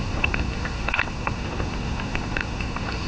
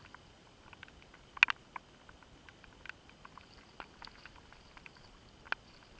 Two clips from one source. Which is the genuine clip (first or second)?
second